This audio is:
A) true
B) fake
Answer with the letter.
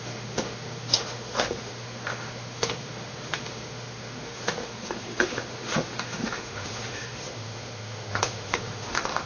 B